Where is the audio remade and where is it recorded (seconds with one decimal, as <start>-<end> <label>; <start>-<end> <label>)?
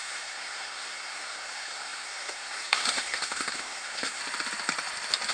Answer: 0.0-4.2 remade; 4.2-5.3 recorded